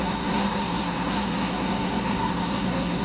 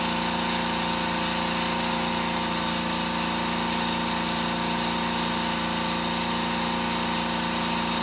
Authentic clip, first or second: second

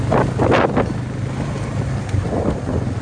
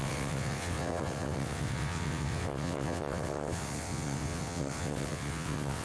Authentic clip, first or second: first